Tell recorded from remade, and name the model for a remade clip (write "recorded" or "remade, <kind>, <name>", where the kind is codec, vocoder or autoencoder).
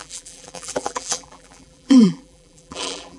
remade, vocoder, BigVGAN v2